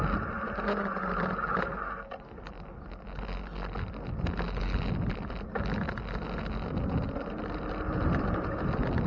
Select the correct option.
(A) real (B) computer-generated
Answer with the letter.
A